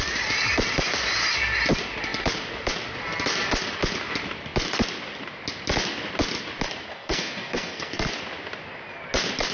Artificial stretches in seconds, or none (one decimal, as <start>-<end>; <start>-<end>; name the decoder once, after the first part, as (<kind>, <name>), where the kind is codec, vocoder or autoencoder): 6.9-8.1 (codec, SNAC)